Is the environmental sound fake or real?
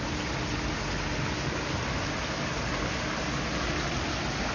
real